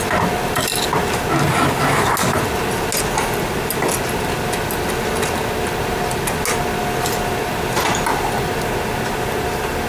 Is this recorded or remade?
recorded